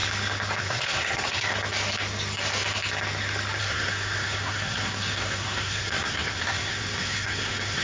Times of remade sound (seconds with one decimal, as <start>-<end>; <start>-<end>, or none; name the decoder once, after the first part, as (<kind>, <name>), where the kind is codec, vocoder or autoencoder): 0.6-1.5 (codec, SNAC); 3.6-7.8